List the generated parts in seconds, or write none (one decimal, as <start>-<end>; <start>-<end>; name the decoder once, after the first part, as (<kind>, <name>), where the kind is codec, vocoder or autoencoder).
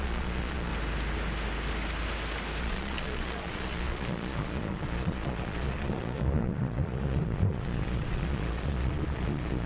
0.0-0.7 (vocoder, Vocos); 2.6-9.7